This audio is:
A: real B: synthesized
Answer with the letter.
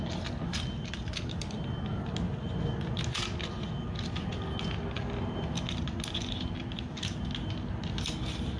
A